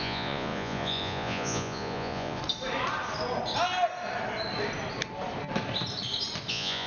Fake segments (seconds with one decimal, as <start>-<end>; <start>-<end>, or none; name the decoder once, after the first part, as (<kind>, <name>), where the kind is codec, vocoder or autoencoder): 0.0-2.4 (vocoder, Vocos); 6.5-6.9